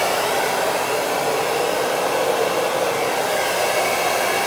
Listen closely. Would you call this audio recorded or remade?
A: recorded